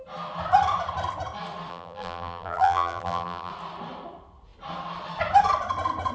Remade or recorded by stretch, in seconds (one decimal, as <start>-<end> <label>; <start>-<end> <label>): 0.0-1.7 recorded; 1.7-3.5 remade; 3.5-6.1 recorded